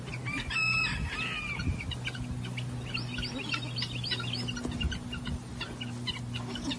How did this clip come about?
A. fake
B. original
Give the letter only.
B